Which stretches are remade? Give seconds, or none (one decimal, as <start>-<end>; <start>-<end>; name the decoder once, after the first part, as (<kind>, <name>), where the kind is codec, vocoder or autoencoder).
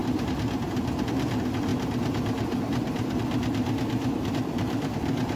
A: 0.0-1.7 (vocoder, BigVGAN v2); 4.3-5.4